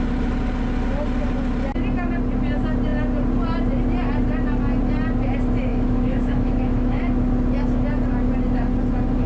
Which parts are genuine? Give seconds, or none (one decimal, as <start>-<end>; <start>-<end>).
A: 0.0-5.7; 7.0-9.3